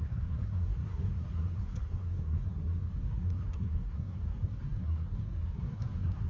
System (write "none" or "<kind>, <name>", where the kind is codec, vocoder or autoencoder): codec, SNAC